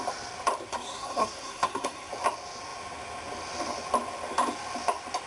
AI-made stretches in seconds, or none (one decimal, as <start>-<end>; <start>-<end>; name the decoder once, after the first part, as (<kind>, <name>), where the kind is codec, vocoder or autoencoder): 0.7-2.1 (codec, SNAC)